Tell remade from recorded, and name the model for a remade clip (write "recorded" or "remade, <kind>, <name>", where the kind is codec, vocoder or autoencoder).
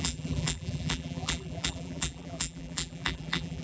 remade, vocoder, BigVGAN v2